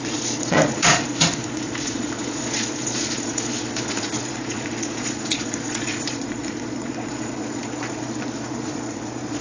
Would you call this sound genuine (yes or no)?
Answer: no